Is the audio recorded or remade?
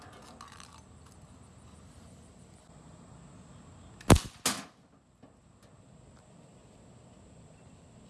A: recorded